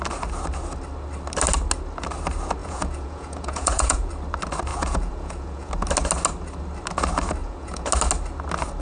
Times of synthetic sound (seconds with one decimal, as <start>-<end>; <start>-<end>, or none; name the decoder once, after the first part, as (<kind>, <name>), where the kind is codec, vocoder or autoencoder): 2.6-4.1 (vocoder, Vocos); 4.7-5.7; 7.4-7.9